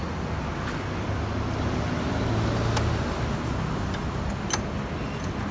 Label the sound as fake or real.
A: real